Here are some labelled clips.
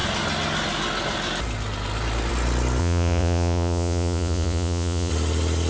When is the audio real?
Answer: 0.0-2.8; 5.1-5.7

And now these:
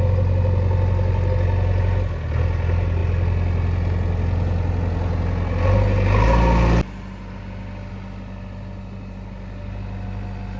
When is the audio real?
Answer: 0.0-10.6

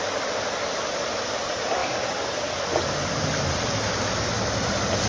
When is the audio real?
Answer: 0.0-5.1